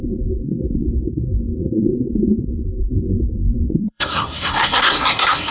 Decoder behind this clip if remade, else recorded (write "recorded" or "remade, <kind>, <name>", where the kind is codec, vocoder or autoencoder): remade, codec, SNAC